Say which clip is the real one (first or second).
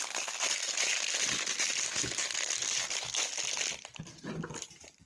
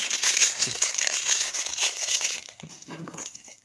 first